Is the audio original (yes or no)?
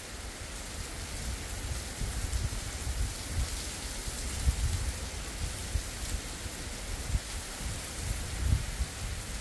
yes